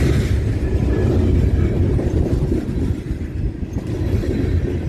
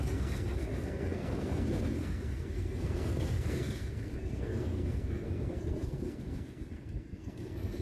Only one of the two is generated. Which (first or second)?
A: second